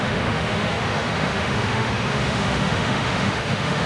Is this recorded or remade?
remade